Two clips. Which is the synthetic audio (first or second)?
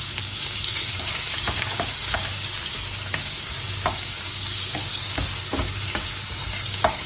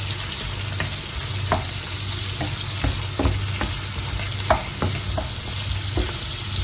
first